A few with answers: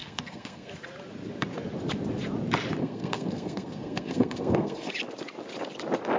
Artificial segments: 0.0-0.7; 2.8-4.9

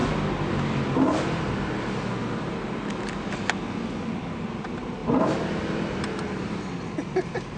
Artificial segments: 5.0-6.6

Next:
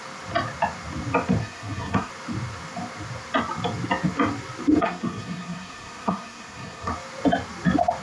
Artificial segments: 1.4-2.1; 4.8-6.9

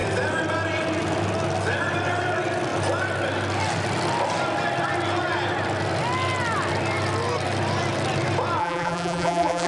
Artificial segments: 8.6-9.7

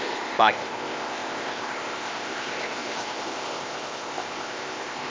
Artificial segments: 0.0-5.1